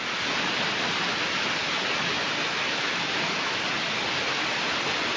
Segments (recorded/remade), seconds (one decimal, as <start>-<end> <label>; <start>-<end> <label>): 0.0-2.4 recorded; 2.4-3.6 remade; 3.6-5.2 recorded